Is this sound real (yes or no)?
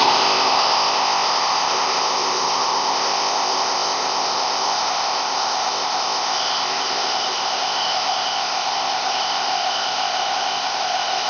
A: no